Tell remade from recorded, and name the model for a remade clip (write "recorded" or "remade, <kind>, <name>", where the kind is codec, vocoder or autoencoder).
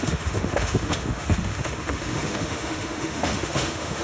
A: remade, autoencoder, DAC-VAE